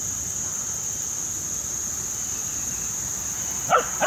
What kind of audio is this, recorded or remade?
recorded